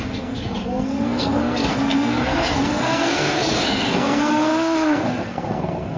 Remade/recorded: remade